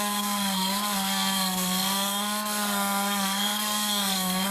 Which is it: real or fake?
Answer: fake